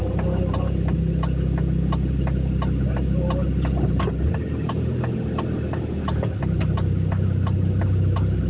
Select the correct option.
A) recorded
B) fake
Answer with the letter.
A